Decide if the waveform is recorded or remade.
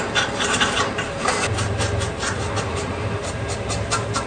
remade